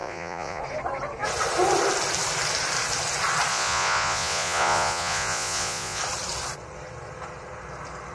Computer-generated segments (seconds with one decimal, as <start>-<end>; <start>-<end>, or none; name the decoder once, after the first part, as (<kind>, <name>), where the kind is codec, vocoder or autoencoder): 0.0-0.6 (vocoder, Vocos); 3.5-6.0